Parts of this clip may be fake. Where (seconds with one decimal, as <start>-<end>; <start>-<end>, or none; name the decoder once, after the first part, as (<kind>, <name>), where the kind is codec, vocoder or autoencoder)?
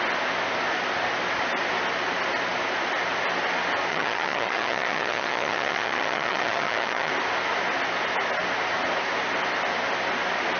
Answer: 3.9-7.1 (vocoder, HiFi-GAN)